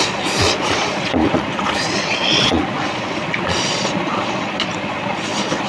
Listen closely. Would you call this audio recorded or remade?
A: remade